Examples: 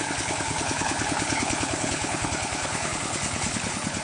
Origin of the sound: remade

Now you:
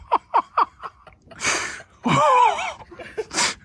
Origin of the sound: recorded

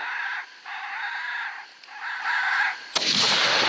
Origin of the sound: recorded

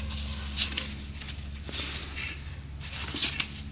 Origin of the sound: recorded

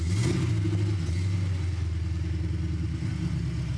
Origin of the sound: recorded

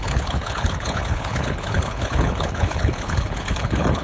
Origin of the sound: remade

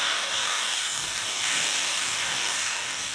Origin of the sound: remade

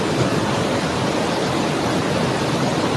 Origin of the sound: recorded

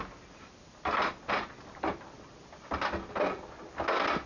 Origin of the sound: recorded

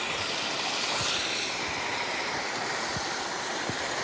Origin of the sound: recorded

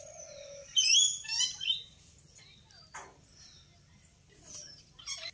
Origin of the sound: recorded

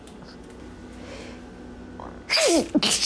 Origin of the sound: recorded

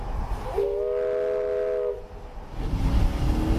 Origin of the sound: recorded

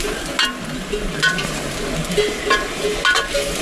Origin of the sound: recorded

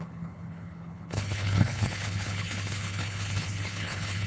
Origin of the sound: remade